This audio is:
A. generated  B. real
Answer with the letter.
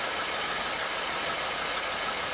B